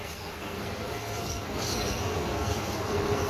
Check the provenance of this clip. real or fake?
fake